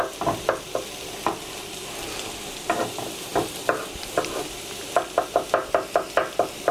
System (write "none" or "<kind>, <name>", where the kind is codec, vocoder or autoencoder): none